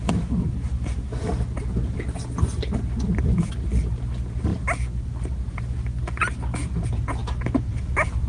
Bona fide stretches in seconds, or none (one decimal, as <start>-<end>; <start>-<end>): 0.0-8.3